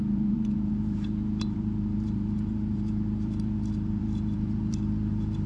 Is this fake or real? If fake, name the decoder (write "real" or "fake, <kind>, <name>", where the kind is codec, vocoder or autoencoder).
fake, vocoder, BigVGAN v2